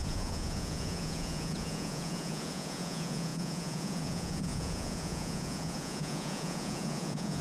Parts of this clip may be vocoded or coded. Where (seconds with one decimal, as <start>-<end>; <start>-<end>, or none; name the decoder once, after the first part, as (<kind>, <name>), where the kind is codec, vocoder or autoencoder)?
0.0-7.4 (vocoder, Vocos)